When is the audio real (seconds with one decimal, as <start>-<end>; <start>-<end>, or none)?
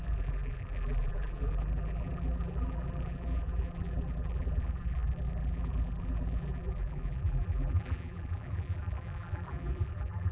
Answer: none